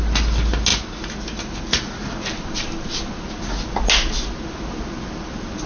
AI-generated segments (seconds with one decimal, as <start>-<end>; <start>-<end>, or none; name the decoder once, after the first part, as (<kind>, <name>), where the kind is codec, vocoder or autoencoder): none

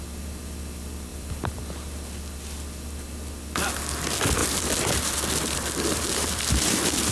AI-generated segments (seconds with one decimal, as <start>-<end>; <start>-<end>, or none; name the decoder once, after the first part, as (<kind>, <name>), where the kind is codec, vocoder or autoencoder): 1.1-1.6 (vocoder, BigVGAN v2); 4.4-7.1

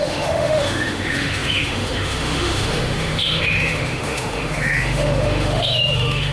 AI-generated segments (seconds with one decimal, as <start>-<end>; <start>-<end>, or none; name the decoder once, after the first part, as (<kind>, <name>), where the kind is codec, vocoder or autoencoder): 0.0-6.3 (autoencoder, DAC-VAE)